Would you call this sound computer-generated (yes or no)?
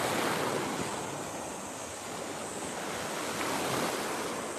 no